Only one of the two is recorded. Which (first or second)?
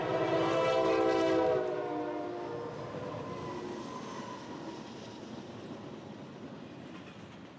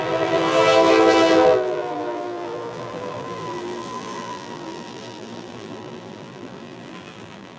first